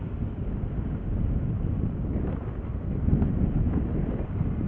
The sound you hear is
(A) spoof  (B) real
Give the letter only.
B